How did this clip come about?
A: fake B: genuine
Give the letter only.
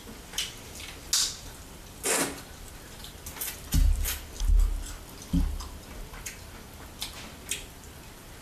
B